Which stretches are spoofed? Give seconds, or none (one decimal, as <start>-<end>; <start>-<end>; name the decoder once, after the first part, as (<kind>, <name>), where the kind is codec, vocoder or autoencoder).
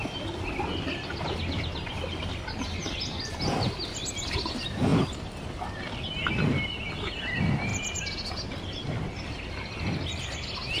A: none